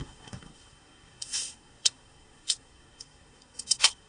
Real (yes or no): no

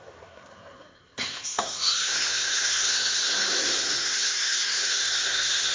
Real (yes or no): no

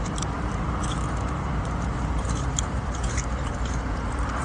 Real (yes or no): no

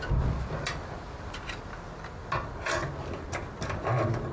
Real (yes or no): yes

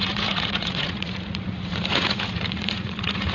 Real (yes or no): no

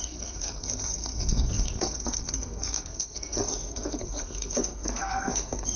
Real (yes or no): no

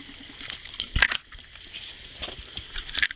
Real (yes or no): yes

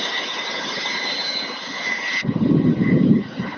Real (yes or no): yes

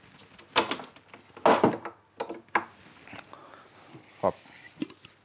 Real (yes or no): yes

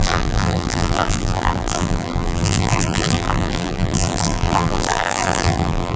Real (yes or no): no